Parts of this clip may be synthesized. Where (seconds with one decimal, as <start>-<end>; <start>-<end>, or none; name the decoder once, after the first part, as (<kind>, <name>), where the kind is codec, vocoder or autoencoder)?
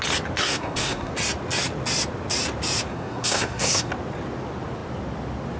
0.4-1.1 (codec, SNAC); 2.9-3.9